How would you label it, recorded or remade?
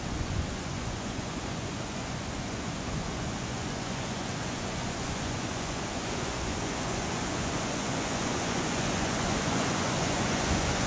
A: remade